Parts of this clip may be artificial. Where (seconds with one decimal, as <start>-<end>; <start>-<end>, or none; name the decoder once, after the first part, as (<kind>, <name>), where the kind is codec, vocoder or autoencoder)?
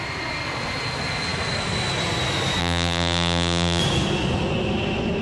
2.6-3.8 (vocoder, BigVGAN v2)